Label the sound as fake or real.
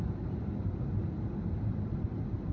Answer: real